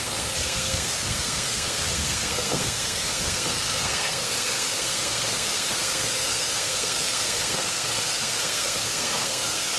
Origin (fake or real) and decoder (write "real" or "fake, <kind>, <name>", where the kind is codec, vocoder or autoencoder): fake, codec, SNAC